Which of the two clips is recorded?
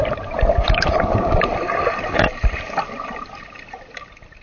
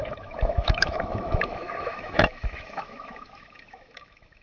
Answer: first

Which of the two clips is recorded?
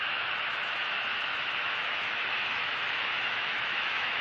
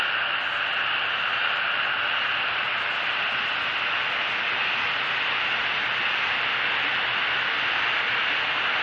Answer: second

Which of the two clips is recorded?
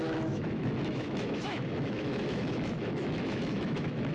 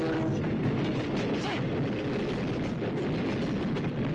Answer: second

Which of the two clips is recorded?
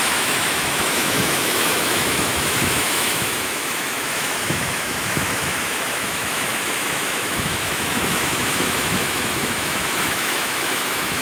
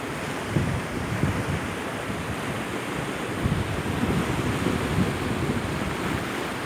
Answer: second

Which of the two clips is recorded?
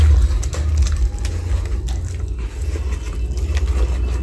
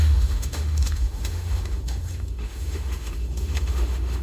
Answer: first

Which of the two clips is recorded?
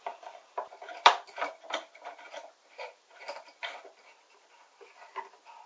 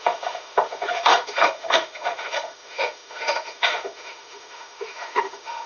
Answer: first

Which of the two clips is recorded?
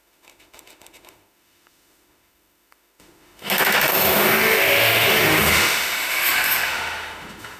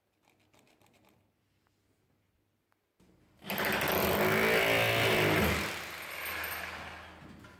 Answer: second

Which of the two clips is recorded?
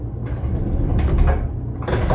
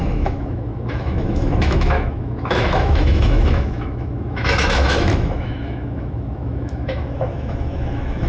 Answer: first